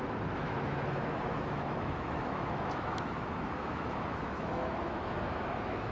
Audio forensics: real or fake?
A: fake